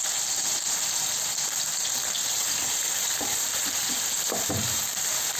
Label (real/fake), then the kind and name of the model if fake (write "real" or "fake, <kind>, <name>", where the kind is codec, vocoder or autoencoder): fake, vocoder, BigVGAN v2